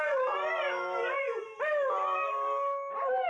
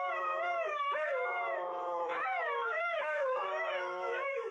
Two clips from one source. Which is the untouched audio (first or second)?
first